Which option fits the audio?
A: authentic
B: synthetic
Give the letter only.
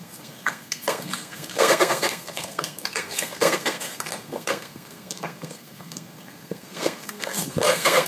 B